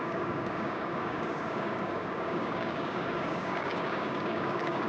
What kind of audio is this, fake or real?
fake